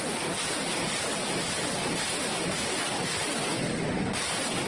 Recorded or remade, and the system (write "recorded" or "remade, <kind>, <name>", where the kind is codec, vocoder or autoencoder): recorded